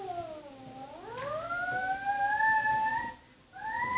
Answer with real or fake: real